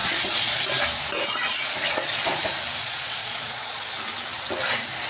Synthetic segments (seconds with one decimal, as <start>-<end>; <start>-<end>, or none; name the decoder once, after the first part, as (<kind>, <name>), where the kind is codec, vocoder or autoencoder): 0.0-0.6 (vocoder, Vocos); 1.9-2.4; 2.8-3.9